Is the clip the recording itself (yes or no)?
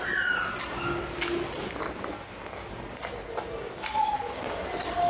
yes